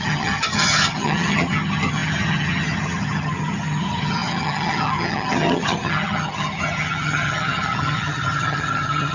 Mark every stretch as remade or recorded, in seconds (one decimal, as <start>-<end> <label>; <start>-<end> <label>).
0.0-9.1 remade